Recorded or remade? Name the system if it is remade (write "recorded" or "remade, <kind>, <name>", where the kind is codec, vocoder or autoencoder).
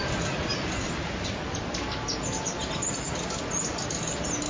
recorded